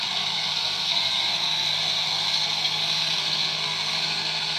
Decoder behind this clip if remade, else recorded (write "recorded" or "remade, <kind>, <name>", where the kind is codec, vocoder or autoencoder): remade, codec, SNAC